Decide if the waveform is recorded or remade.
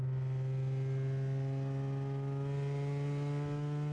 recorded